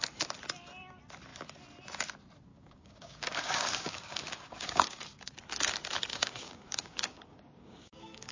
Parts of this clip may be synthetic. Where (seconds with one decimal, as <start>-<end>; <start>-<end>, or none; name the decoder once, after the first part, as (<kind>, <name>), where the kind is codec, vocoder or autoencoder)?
2.5-5.2 (codec, DAC); 6.1-8.3